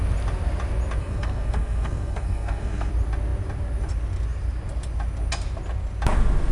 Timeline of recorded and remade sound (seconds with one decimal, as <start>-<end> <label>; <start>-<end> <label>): 0.0-1.0 recorded; 1.0-2.9 remade; 2.9-6.5 recorded